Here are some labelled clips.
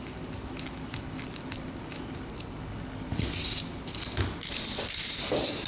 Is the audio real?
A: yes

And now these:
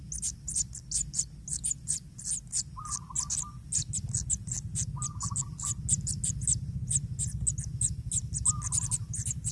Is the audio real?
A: yes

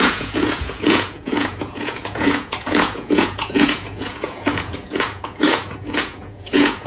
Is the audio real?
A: no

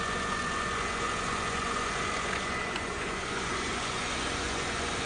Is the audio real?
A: no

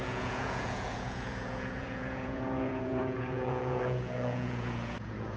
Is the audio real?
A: no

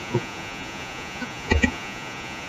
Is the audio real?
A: no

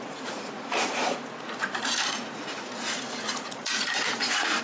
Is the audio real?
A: no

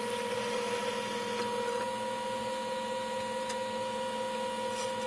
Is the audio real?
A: yes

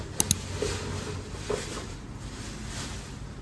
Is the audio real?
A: yes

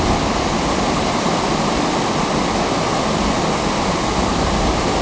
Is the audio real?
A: yes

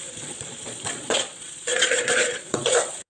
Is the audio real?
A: no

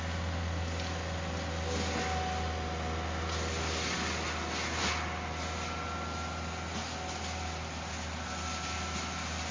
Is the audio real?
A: yes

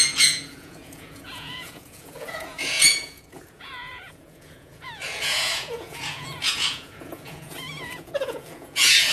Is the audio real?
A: no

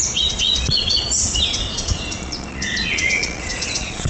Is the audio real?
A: no